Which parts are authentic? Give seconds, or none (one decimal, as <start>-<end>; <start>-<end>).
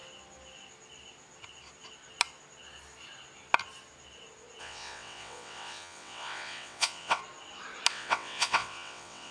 0.0-4.6; 7.2-7.9